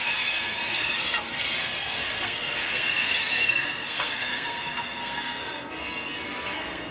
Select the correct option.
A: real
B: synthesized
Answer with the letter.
B